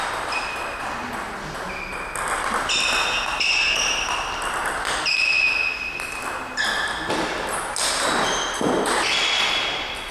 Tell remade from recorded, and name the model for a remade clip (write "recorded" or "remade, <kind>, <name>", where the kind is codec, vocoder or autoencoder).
recorded